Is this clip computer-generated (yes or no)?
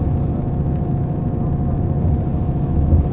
no